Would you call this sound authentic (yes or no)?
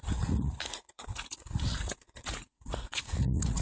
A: no